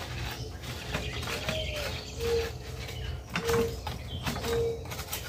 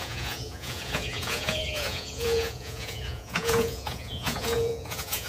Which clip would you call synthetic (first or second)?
second